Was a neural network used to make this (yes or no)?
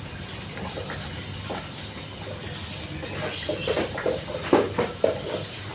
no